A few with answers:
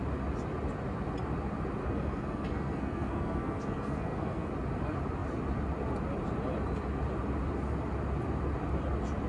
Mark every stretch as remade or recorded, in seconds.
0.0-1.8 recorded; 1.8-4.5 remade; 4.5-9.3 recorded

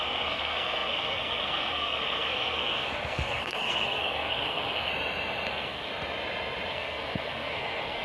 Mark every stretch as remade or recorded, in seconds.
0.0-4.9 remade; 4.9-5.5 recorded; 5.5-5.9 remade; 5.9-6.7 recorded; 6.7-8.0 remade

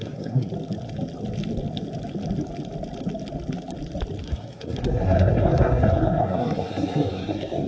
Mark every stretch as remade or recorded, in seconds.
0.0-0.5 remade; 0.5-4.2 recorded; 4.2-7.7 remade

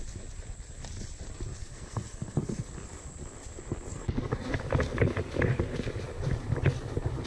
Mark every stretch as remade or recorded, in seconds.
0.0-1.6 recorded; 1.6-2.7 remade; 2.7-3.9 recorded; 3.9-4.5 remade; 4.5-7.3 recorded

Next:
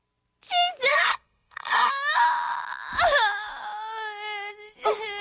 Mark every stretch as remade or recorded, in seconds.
0.0-0.9 recorded; 0.9-1.9 remade; 1.9-5.2 recorded

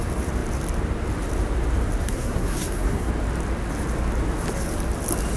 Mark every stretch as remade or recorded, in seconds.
0.0-2.0 recorded; 2.0-3.1 remade; 3.1-5.4 recorded